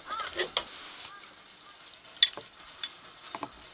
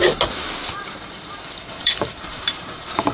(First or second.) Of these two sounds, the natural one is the first